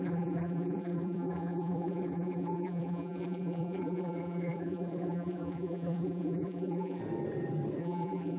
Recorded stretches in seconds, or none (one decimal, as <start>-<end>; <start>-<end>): 7.0-7.8